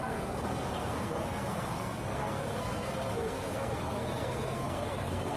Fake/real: fake